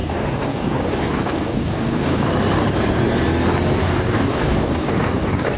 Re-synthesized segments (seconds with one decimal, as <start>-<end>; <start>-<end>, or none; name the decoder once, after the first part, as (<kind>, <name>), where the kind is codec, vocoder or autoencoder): 0.0-2.3 (codec, DAC); 3.8-5.6